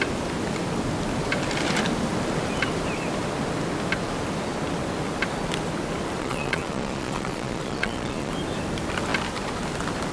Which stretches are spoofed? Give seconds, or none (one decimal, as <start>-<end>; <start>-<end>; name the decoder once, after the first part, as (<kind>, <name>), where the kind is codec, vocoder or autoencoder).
6.2-8.3 (vocoder, Vocos)